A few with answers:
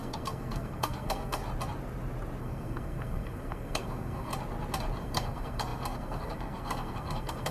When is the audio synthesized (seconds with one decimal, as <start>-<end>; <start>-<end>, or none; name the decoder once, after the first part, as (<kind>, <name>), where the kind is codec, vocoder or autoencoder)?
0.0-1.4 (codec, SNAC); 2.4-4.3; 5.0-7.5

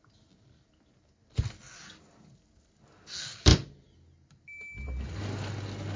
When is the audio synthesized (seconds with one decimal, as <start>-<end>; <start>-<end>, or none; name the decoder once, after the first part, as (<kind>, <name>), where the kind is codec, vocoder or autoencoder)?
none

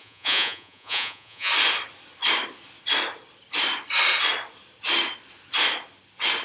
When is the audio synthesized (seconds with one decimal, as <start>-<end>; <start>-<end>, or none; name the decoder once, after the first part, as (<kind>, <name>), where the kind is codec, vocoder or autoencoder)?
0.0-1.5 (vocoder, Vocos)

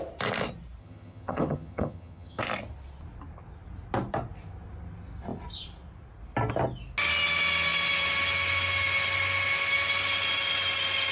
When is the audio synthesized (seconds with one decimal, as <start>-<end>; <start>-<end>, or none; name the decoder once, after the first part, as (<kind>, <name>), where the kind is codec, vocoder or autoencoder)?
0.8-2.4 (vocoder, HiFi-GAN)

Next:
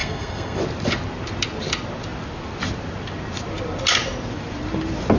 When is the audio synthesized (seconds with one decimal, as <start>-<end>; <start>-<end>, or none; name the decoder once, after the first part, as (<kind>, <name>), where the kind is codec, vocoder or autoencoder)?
0.0-0.6 (codec, SNAC)